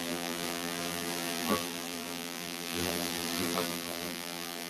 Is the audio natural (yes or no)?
no